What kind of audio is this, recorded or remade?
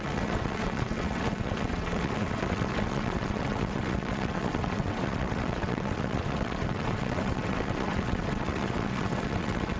remade